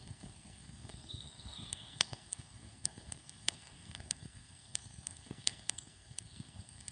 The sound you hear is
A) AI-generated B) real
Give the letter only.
A